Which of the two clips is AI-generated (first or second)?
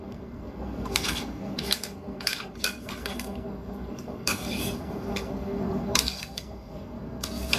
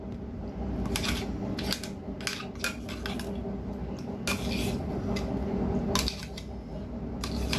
first